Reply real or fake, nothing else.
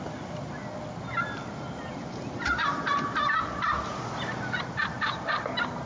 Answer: real